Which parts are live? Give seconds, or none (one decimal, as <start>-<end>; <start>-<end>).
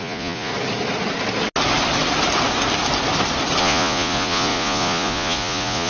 0.5-3.6